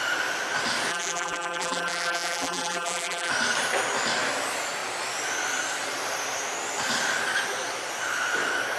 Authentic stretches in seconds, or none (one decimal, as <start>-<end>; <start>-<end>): 0.0-0.9; 3.3-8.8